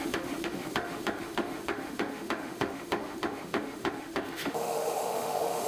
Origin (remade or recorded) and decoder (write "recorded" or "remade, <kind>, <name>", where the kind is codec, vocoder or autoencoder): remade, autoencoder, DAC-VAE